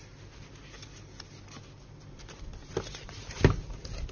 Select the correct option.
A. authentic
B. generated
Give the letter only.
A